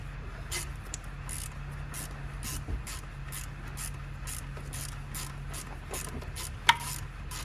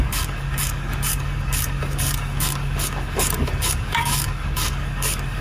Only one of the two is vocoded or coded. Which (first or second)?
second